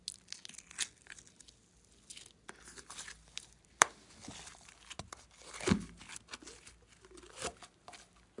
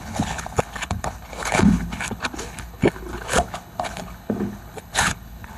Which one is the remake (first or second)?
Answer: second